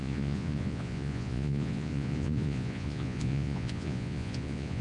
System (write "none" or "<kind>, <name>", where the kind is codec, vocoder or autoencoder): vocoder, Vocos